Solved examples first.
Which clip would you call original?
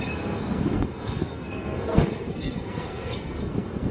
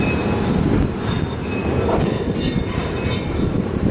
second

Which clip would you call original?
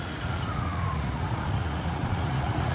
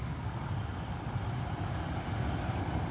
second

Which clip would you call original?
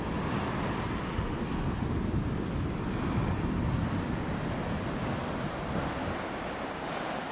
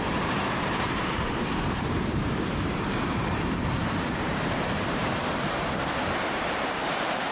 first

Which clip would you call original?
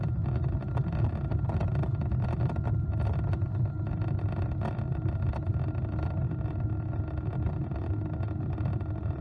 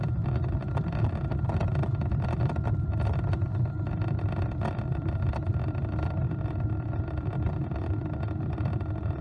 first